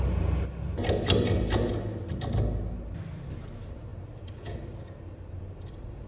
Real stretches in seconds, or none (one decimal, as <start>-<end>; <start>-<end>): 0.0-6.1